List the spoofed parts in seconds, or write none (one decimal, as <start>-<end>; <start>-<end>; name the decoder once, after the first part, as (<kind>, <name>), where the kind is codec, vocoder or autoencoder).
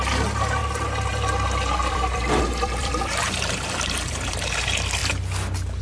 1.8-4.5 (vocoder, BigVGAN v2)